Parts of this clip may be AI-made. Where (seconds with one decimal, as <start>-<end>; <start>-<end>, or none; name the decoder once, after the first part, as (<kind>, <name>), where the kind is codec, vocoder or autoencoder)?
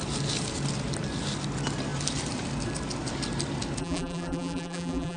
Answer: 3.8-5.2 (vocoder, BigVGAN v2)